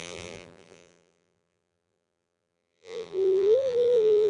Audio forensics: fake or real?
fake